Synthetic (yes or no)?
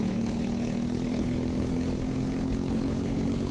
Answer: yes